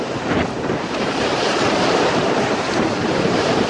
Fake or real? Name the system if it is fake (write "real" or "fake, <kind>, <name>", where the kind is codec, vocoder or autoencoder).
fake, vocoder, BigVGAN v2